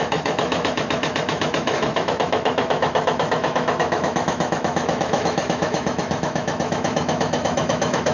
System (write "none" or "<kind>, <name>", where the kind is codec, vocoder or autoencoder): autoencoder, DAC-VAE